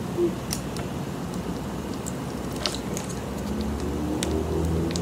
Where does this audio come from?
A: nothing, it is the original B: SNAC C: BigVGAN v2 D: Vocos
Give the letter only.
A